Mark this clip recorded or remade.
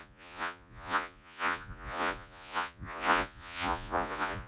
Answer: remade